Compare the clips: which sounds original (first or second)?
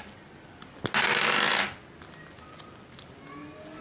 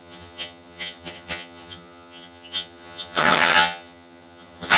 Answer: first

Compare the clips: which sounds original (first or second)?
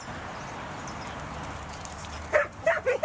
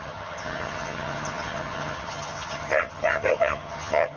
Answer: first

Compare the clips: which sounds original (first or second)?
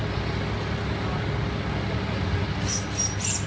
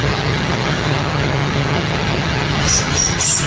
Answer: first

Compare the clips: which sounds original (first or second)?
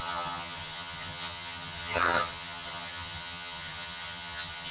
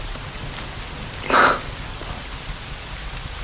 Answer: second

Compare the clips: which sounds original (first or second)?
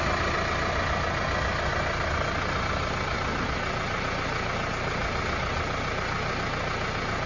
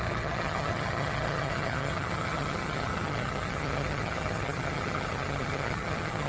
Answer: first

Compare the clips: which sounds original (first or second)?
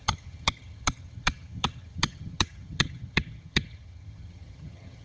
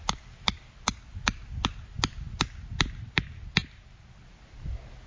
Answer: second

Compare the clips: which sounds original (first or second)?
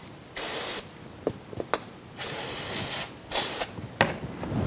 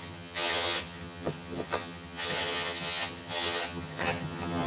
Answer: first